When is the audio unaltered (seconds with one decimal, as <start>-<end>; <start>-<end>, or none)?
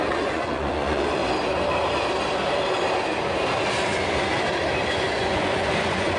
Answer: 1.2-4.9